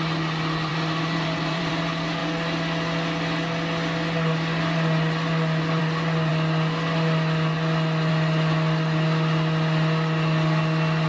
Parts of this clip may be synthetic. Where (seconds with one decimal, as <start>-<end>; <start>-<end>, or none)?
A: 0.7-1.7